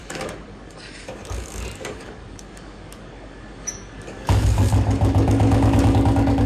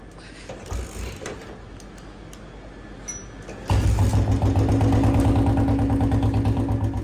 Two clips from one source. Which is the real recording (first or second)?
second